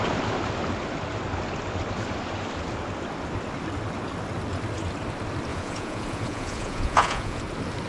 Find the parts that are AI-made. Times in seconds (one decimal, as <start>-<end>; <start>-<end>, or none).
5.5-7.4